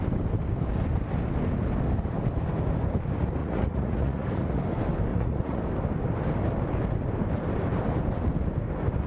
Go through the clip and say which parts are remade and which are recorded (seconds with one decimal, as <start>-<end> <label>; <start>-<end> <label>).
0.0-3.4 recorded; 3.4-4.6 remade; 4.6-5.1 recorded; 5.1-5.6 remade; 5.6-9.1 recorded